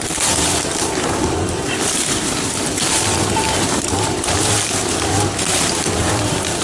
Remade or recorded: remade